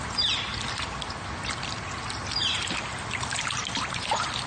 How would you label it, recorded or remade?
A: recorded